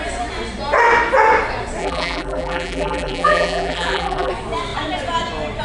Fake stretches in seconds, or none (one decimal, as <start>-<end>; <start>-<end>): 1.8-4.3